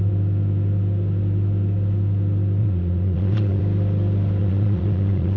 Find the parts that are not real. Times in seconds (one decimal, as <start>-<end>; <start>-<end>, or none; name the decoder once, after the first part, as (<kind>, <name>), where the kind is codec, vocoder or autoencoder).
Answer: 2.6-3.6 (vocoder, Vocos); 4.4-5.4